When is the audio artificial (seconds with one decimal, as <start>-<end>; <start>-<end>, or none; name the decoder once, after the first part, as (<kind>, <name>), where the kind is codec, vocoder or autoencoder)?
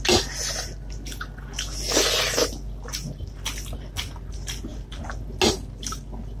none